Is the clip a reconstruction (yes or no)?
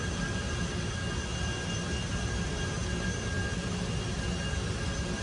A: no